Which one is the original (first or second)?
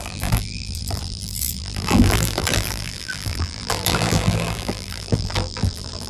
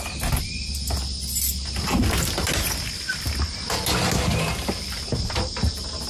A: second